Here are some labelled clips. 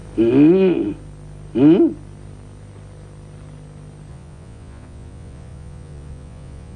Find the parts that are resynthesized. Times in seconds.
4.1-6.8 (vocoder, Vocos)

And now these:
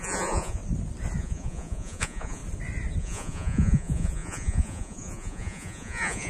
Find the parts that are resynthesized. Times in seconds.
0.0-0.6 (vocoder, Vocos); 1.2-2.4; 3.0-6.3

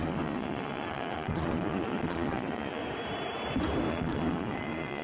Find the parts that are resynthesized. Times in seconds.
0.0-2.8 (vocoder, Vocos); 3.9-5.0